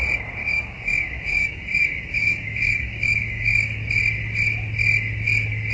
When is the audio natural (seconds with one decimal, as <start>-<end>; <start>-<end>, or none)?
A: 0.0-0.4; 3.8-5.7

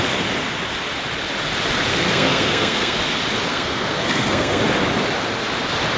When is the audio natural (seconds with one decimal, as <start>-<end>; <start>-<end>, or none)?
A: 0.0-1.9; 3.0-3.5; 4.6-6.0

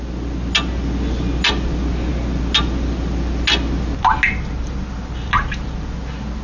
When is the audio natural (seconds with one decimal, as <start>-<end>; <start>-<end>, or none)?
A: 0.0-6.4

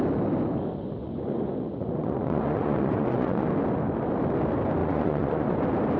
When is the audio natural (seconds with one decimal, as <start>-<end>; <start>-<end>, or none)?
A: 0.0-1.0; 3.5-4.8; 5.6-6.0

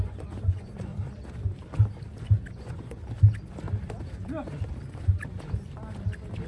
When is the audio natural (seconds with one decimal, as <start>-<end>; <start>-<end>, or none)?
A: 0.9-2.5; 3.0-6.5

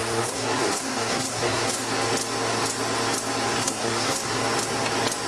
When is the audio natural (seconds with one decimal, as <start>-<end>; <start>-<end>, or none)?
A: 1.9-3.6; 4.4-5.3